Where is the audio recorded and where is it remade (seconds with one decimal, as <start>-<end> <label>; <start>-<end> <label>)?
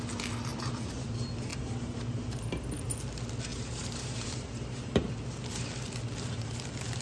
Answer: 0.0-0.5 recorded; 0.5-1.1 remade; 1.1-1.5 recorded; 1.5-2.4 remade; 2.4-3.5 recorded; 3.5-5.1 remade; 5.1-7.0 recorded